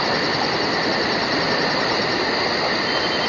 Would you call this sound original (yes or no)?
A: yes